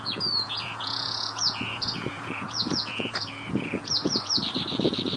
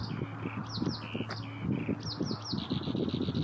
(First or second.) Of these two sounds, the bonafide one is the second